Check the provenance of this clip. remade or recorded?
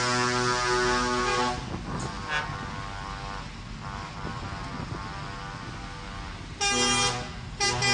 recorded